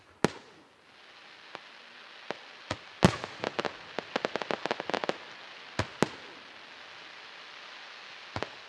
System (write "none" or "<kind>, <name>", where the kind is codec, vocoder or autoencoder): none